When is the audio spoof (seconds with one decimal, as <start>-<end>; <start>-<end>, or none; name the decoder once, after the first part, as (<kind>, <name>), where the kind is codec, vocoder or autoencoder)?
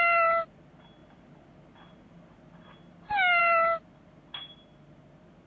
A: none